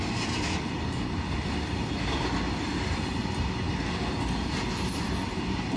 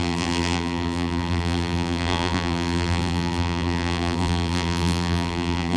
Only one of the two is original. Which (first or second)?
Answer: first